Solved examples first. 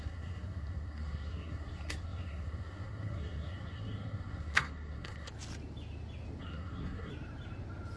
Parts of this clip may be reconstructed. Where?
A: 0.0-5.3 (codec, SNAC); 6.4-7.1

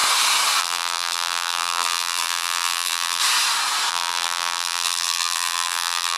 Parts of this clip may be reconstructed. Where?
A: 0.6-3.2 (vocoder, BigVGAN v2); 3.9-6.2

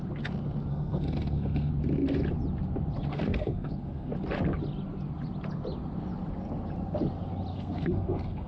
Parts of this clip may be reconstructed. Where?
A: 0.7-1.7 (codec, SNAC); 3.1-4.1; 7.5-8.5

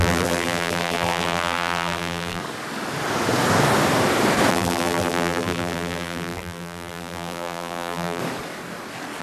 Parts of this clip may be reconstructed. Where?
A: 0.0-2.4 (vocoder, BigVGAN v2); 4.5-8.2

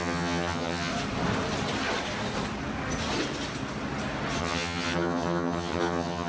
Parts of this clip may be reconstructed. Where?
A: 0.0-0.9 (vocoder, HiFi-GAN); 4.4-6.3

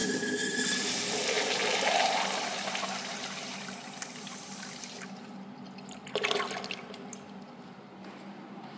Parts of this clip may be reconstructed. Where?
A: none

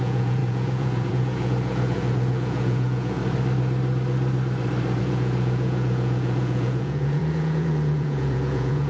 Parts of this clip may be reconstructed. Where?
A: 0.0-3.2 (vocoder, Vocos); 5.0-8.9

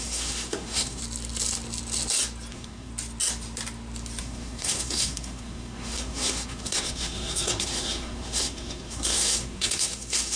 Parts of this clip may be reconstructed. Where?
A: 0.0-1.0 (codec, SNAC); 2.5-2.9; 4.2-10.4